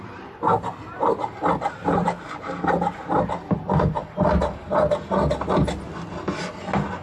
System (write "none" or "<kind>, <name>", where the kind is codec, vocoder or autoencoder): none